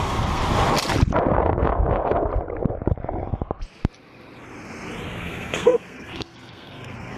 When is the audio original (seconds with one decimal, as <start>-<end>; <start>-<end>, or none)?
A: 0.4-1.3; 2.3-5.2